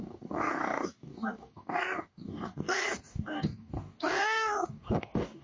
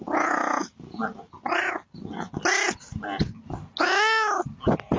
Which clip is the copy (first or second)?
first